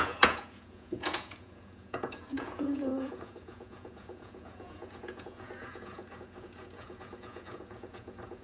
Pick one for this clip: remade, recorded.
remade